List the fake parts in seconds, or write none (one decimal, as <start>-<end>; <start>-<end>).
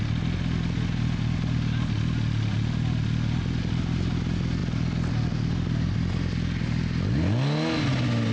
none